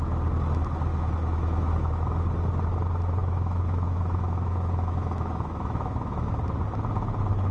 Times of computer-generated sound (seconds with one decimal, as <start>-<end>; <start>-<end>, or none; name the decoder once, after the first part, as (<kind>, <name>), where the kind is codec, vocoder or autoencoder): 0.9-1.9 (autoencoder, DAC-VAE); 3.2-6.4